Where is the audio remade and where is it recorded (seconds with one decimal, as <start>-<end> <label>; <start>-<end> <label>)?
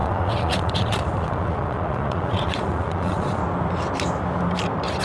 0.0-3.4 remade; 3.4-5.0 recorded